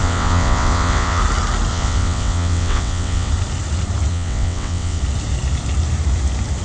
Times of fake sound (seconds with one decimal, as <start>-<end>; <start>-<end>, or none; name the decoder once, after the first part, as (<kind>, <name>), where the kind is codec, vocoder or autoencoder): 0.0-1.2 (vocoder, WaveNeXt); 1.7-3.3; 4.1-5.0